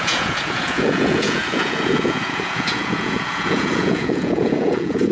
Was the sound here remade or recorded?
remade